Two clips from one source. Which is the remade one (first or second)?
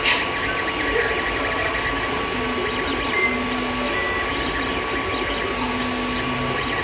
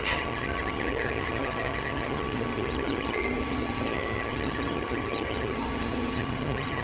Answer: second